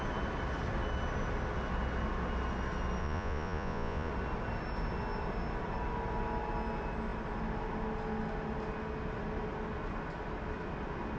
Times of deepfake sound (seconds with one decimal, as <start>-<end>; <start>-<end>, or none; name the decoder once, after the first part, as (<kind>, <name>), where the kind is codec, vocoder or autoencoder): 3.0-4.1 (vocoder, Vocos)